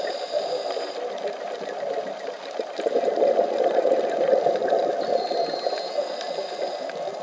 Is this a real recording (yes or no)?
yes